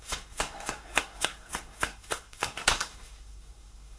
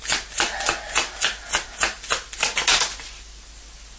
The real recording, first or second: second